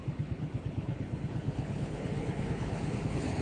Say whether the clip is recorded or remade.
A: remade